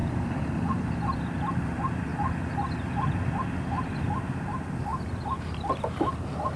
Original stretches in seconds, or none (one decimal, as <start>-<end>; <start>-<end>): 0.0-6.6